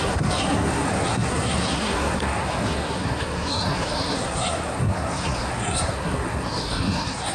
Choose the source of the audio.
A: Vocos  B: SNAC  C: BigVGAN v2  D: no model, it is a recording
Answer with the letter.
B